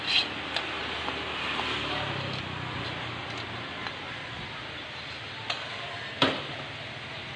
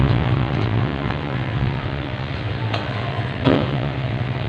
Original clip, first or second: first